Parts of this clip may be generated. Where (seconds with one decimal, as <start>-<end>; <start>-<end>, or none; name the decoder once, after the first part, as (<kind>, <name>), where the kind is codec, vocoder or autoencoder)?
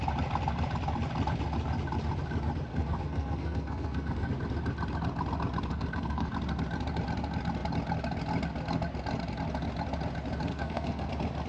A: 2.7-4.3 (codec, SNAC); 5.7-6.3; 10.5-11.1